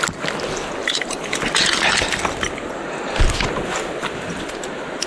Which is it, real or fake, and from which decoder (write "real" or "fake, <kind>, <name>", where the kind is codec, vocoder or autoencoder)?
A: real